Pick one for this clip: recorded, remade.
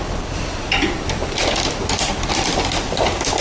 remade